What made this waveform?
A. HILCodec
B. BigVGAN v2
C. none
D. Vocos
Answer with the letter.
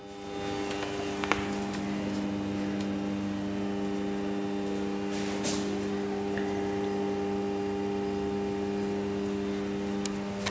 C